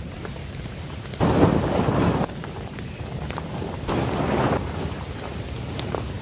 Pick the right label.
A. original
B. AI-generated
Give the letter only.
B